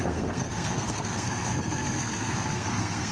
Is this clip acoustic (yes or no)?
no